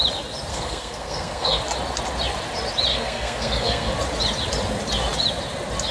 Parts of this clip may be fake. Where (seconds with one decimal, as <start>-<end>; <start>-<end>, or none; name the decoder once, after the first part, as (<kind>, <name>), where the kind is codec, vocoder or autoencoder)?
0.5-1.6 (codec, SNAC); 2.9-3.9